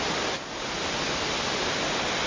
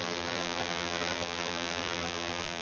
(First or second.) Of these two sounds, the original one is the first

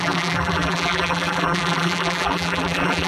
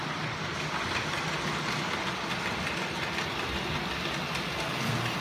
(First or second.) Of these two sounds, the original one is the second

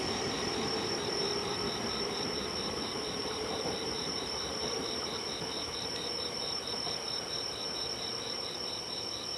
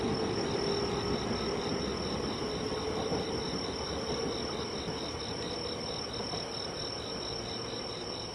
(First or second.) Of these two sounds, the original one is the second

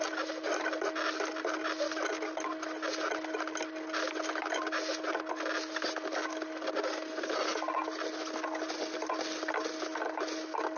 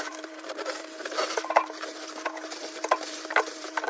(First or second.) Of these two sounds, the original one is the first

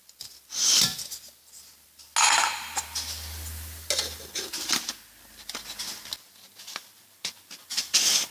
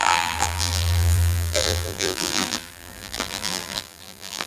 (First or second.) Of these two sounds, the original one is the first